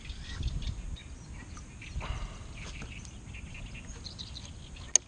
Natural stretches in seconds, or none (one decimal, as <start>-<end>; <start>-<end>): 0.0-5.1